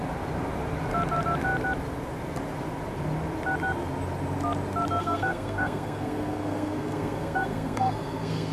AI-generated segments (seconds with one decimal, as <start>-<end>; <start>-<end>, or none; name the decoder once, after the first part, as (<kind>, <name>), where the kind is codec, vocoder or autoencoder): 5.0-8.5 (codec, SNAC)